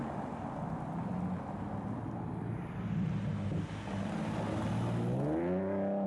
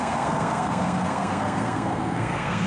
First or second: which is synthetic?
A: second